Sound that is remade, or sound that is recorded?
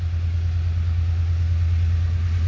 recorded